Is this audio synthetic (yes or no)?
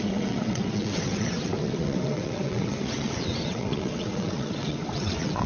yes